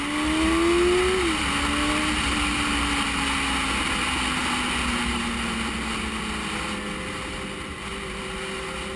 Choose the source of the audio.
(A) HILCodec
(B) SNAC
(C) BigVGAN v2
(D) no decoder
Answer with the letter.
D